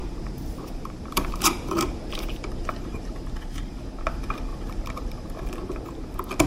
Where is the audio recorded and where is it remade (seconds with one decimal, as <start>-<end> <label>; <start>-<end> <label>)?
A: 0.0-3.9 remade; 3.9-4.5 recorded; 4.5-5.4 remade; 5.4-6.5 recorded